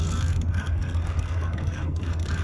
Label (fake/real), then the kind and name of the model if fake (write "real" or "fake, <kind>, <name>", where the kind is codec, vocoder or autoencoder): fake, codec, SNAC